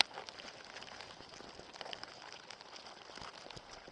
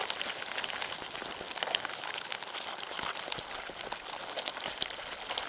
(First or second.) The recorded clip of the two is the first